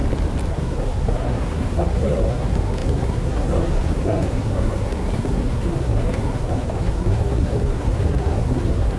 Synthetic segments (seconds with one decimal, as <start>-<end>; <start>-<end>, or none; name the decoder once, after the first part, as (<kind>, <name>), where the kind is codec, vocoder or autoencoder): 0.5-9.0 (codec, SNAC)